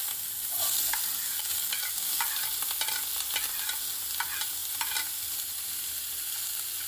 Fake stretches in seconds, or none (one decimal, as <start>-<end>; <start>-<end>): none